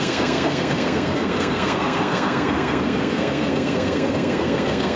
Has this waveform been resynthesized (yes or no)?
yes